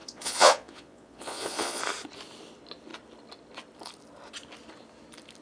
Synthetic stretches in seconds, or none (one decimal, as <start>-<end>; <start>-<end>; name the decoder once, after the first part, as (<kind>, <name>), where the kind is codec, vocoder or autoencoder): 0.0-1.8 (vocoder, Vocos)